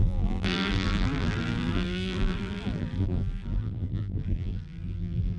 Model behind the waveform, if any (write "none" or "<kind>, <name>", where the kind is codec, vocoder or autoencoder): vocoder, BigVGAN v2